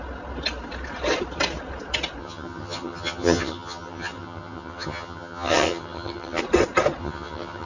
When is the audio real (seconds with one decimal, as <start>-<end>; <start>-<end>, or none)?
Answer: 0.0-2.2; 6.4-7.0